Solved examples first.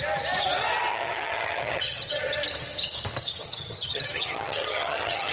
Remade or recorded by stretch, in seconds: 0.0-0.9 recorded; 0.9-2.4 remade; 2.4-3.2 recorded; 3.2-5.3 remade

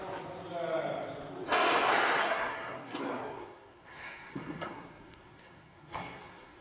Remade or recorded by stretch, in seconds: 0.0-2.2 recorded; 2.2-6.6 remade

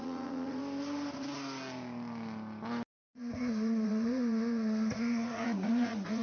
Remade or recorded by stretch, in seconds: 0.0-0.6 remade; 0.6-3.1 recorded; 3.1-6.2 remade

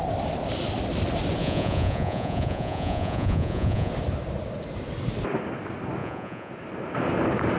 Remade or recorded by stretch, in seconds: 0.0-1.4 recorded; 1.4-3.9 remade; 3.9-6.0 recorded; 6.0-6.5 remade; 6.5-7.6 recorded

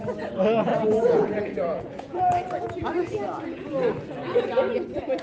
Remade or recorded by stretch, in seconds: 0.0-0.7 recorded; 0.7-2.2 remade; 2.2-5.2 recorded